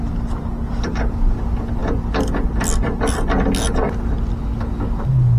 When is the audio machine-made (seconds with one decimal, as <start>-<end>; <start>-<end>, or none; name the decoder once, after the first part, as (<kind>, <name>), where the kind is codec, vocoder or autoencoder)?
none